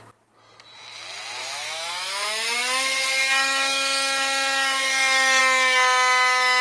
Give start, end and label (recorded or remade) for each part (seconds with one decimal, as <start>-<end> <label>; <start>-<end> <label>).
0.0-1.4 recorded; 1.4-5.4 remade; 5.4-6.6 recorded